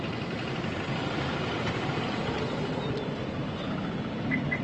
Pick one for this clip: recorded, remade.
recorded